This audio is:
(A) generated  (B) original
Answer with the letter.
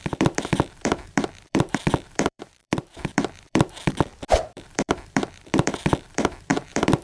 A